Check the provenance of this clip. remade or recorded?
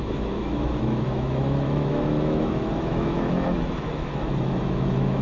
remade